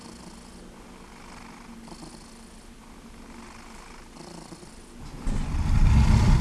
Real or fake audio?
real